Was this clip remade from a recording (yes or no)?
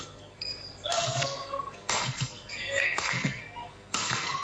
yes